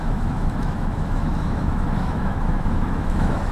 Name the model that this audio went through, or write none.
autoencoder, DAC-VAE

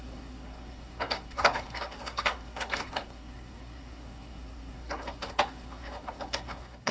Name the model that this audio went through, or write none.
codec, SNAC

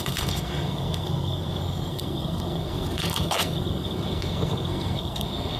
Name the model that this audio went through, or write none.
codec, SNAC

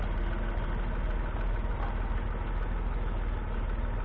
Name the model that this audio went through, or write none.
none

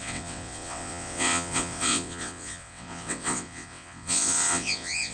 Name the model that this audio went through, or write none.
vocoder, WaveNeXt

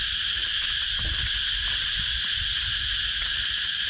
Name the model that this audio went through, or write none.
none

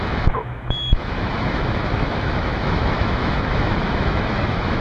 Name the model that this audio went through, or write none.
autoencoder, DAC-VAE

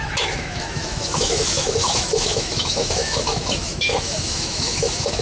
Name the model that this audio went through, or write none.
autoencoder, DAC-VAE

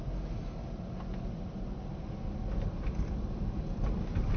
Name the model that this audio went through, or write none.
none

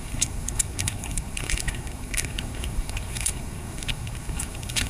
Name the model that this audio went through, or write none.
codec, SNAC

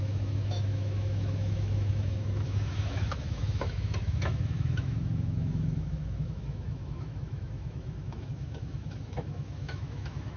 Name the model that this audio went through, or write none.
autoencoder, DAC-VAE